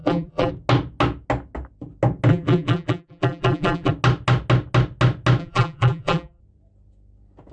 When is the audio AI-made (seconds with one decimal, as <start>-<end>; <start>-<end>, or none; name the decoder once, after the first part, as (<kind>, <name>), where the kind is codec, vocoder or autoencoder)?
0.0-0.5 (vocoder, BigVGAN v2); 2.3-3.9; 5.4-6.4